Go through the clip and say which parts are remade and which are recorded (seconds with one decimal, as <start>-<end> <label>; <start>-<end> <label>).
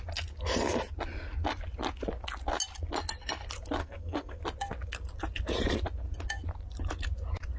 0.0-3.8 recorded; 3.8-4.4 remade; 4.4-7.6 recorded